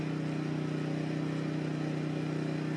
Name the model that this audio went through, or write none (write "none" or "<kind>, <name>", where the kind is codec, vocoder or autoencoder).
none